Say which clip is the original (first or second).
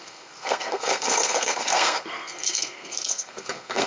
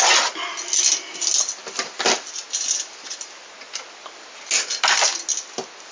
second